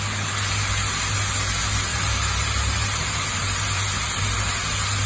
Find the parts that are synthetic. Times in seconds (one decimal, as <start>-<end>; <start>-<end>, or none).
1.9-4.2